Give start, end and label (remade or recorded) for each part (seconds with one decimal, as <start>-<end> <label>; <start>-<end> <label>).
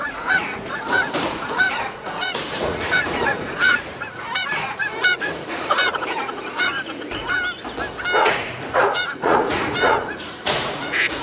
0.0-7.4 remade; 7.4-8.2 recorded; 8.2-11.2 remade